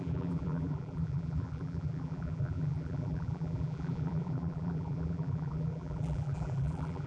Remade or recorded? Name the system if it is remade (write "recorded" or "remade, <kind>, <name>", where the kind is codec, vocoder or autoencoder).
remade, vocoder, BigVGAN v2